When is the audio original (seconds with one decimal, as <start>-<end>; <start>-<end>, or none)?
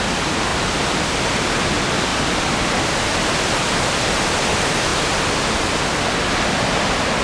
0.0-7.2